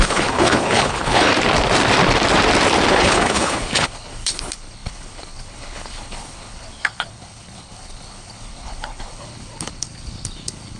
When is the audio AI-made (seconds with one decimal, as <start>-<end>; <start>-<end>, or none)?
0.0-1.3; 2.9-10.8